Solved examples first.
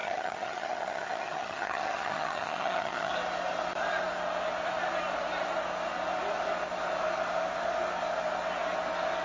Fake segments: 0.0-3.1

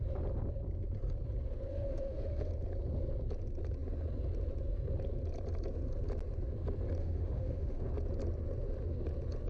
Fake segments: 1.7-2.5; 7.0-7.9

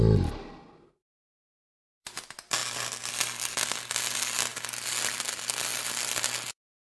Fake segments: none

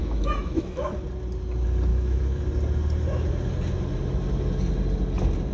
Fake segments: 0.0-0.9; 1.9-2.4